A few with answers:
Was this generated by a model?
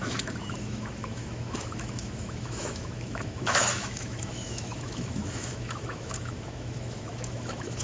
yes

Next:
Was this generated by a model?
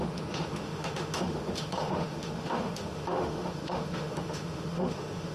yes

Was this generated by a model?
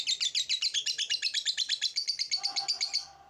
no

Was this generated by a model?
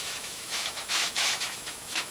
yes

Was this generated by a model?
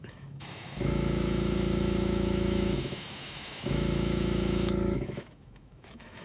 yes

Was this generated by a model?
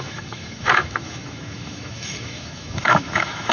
yes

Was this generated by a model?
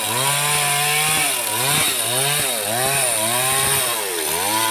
no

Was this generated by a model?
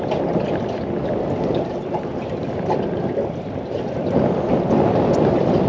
no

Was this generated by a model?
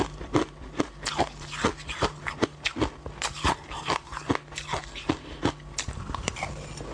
no